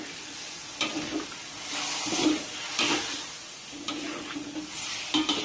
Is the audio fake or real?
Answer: real